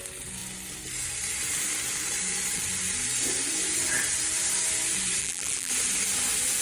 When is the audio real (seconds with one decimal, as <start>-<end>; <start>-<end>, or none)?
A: 0.0-5.2; 5.7-6.6